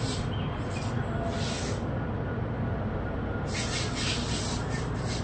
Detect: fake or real real